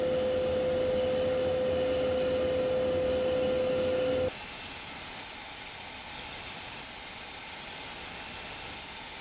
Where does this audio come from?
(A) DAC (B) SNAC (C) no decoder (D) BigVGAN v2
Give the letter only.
C